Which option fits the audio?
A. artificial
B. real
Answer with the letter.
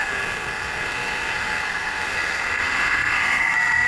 A